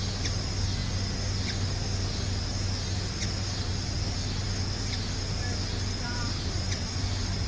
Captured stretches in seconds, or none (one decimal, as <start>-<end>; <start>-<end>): 0.0-7.5